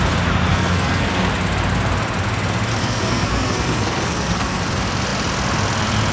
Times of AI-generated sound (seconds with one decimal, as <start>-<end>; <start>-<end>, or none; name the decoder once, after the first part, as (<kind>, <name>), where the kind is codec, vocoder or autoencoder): 0.5-1.3 (codec, SNAC); 2.8-4.6